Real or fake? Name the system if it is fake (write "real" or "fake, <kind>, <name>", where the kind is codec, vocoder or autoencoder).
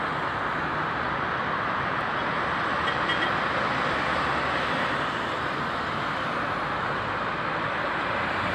real